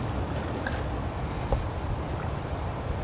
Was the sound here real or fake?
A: real